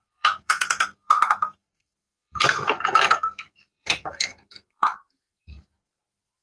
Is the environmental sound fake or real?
fake